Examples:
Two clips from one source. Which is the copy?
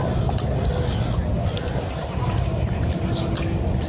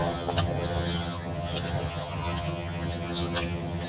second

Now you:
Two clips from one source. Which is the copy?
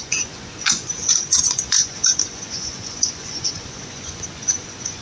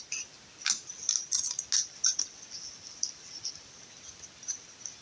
first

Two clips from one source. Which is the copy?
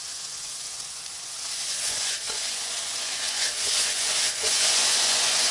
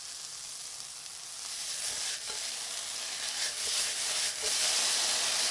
first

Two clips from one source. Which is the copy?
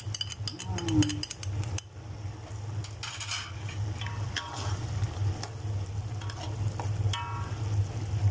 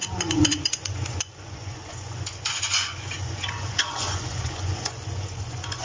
second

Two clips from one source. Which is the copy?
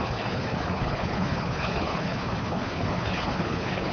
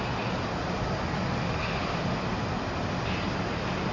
first